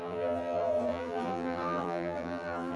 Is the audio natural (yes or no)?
no